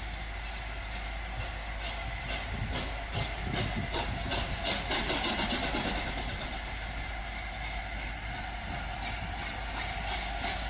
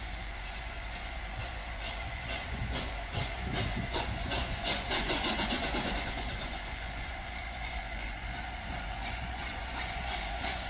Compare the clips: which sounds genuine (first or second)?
first